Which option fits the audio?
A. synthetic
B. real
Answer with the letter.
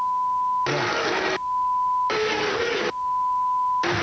B